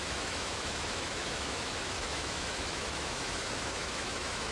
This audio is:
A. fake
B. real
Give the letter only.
A